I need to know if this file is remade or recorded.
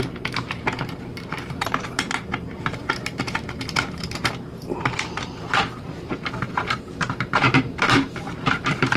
remade